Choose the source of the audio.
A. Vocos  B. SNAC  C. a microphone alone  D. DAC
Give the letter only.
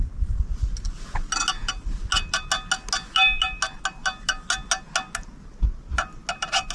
C